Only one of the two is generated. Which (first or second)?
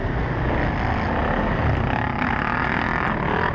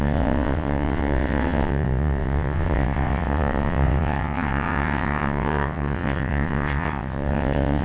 second